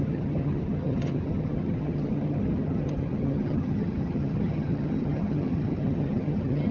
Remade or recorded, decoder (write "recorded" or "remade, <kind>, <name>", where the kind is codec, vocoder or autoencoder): remade, vocoder, HiFi-GAN